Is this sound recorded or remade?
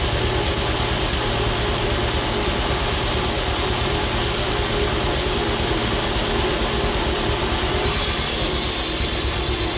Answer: recorded